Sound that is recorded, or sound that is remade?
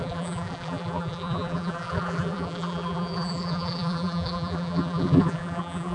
remade